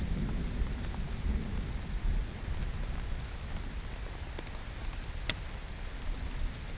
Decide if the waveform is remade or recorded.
recorded